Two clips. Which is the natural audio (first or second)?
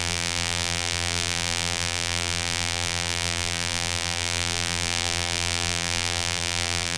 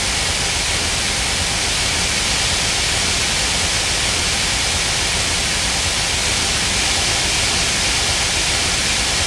second